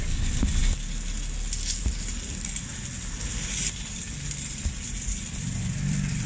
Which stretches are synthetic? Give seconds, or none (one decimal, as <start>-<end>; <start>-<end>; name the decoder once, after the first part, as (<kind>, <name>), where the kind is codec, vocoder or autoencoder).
0.0-0.6 (vocoder, BigVGAN v2); 1.8-6.3